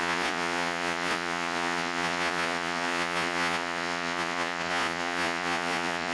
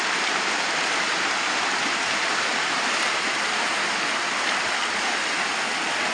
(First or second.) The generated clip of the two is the first